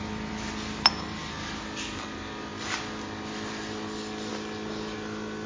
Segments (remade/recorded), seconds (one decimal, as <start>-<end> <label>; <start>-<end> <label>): 0.0-5.5 recorded